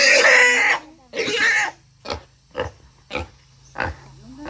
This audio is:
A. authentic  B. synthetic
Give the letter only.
A